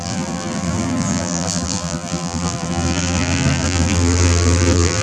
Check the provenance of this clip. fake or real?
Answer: fake